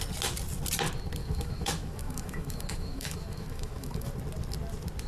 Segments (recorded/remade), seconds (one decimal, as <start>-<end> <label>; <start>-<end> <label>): 0.0-1.2 recorded; 1.2-4.1 remade; 4.1-5.1 recorded